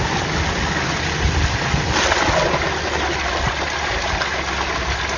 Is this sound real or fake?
real